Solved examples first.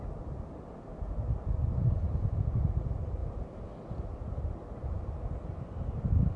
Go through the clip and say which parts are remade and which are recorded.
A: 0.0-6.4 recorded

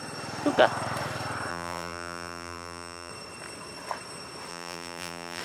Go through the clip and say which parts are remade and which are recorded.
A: 0.0-1.5 recorded; 1.5-3.1 remade; 3.1-4.5 recorded; 4.5-5.4 remade